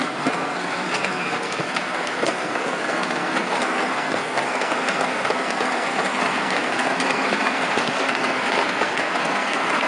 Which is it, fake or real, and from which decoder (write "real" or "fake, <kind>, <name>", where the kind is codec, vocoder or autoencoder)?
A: fake, codec, SNAC